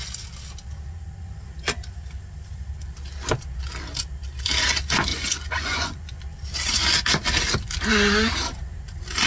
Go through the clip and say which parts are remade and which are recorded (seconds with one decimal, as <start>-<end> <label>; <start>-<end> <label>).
0.0-5.1 recorded; 5.1-6.2 remade; 6.2-9.3 recorded